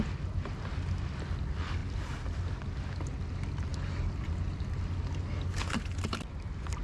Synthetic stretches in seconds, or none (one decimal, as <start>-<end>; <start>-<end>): none